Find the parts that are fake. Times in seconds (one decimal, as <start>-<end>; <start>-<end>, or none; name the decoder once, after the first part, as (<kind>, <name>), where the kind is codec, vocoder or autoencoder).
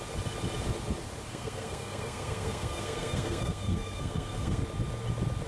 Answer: 1.3-4.6 (codec, SNAC)